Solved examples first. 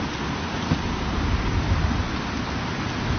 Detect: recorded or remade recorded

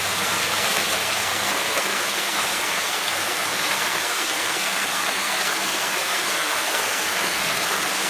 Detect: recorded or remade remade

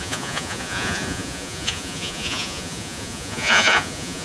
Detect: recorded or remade remade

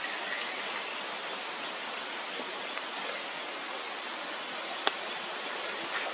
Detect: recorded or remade recorded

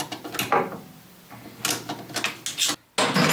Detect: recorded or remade recorded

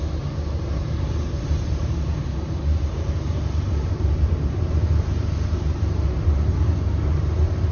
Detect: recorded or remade remade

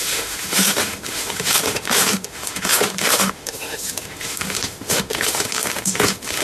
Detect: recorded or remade remade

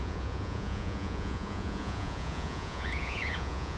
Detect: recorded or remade remade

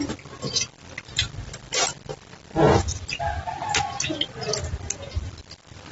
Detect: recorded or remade recorded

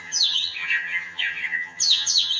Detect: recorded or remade remade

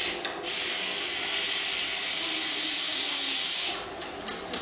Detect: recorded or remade recorded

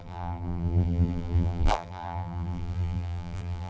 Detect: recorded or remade remade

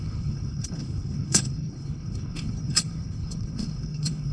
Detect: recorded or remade remade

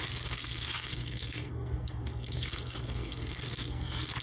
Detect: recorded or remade remade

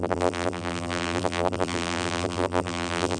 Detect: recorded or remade remade